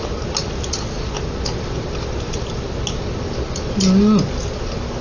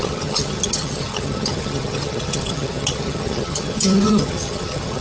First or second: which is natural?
first